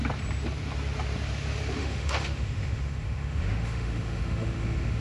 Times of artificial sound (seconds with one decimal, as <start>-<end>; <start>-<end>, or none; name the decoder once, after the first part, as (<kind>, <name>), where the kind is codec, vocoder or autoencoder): 1.8-5.0 (autoencoder, DAC-VAE)